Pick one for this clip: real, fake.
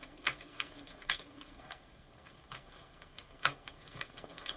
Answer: fake